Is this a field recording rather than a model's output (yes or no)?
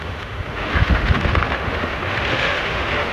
no